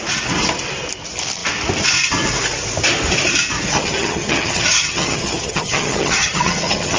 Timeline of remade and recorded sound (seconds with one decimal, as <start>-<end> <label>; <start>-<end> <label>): 0.0-3.7 recorded; 3.7-7.0 remade